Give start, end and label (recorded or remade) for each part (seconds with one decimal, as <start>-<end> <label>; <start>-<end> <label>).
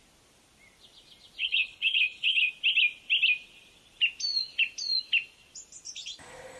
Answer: 0.0-1.4 recorded; 1.4-2.5 remade; 2.5-6.6 recorded